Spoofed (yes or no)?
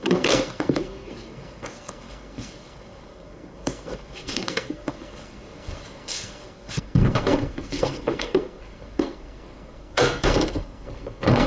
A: yes